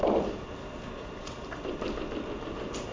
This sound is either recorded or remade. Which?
recorded